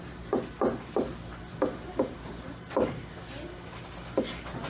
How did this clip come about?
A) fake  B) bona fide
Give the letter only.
B